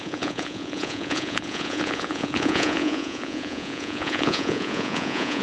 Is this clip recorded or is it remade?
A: remade